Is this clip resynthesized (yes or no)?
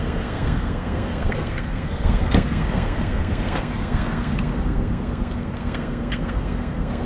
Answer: yes